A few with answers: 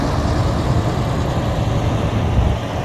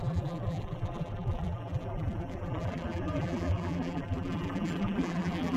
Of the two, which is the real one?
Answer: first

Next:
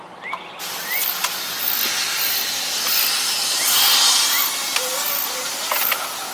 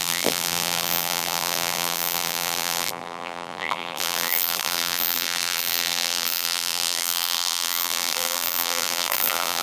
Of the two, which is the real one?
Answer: first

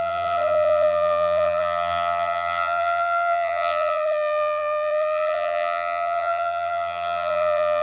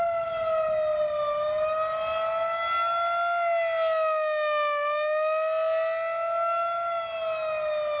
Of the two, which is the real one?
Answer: second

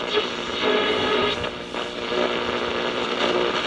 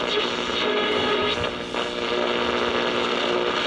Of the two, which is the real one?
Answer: second